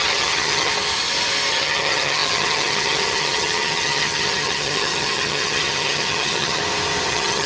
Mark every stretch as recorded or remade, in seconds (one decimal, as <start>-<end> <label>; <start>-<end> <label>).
0.0-0.7 remade; 0.7-1.5 recorded; 1.5-6.6 remade; 6.6-7.1 recorded; 7.1-7.5 remade